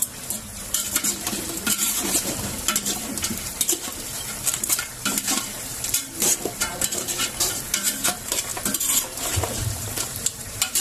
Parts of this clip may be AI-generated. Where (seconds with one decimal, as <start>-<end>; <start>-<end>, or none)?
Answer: 0.0-8.5; 9.0-10.8